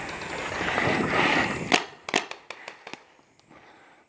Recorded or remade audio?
recorded